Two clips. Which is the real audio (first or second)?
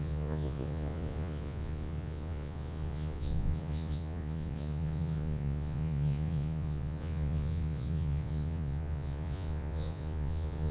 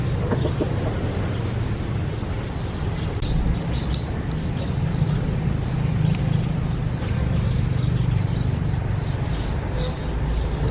second